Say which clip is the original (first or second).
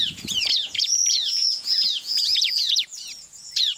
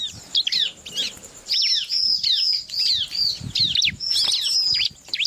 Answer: second